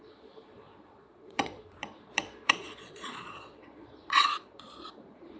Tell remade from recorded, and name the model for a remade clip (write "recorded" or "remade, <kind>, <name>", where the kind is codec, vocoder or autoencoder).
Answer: remade, vocoder, Vocos